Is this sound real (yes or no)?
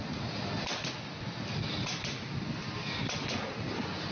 no